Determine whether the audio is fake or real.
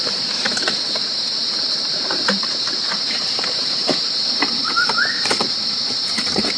fake